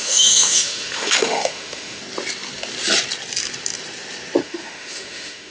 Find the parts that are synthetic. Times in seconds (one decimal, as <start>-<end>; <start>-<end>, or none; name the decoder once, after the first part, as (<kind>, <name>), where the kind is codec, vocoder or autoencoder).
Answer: 0.0-2.0 (autoencoder, DAC-VAE); 4.4-5.5